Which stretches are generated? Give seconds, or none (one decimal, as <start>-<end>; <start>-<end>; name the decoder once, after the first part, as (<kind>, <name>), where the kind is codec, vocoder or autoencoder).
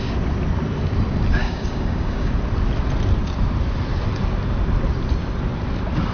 1.4-2.3 (codec, DAC)